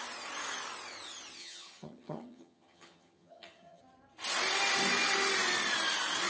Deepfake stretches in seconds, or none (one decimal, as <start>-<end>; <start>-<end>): 1.4-3.8